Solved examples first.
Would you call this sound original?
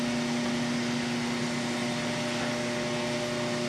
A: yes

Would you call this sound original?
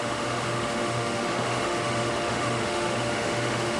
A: no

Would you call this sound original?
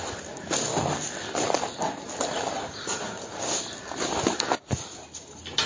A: yes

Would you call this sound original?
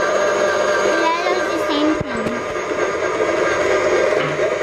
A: yes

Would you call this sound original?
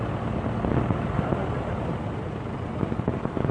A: yes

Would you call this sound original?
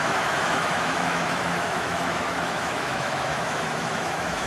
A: no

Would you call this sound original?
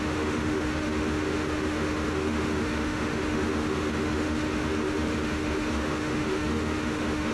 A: no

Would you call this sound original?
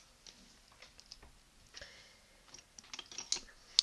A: yes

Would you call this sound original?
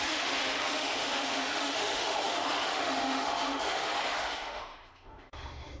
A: no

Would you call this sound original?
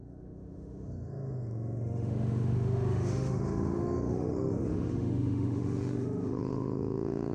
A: no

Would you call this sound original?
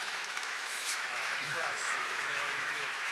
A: no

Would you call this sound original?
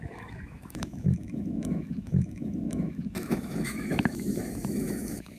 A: no